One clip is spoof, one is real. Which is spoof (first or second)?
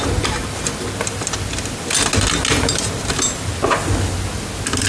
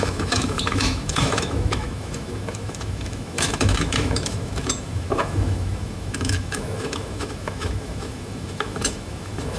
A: second